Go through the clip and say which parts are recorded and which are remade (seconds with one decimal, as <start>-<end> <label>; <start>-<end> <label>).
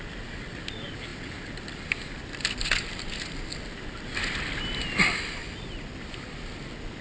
0.0-7.0 recorded